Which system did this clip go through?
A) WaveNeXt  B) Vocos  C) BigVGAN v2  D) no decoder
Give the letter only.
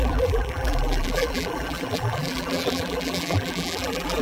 C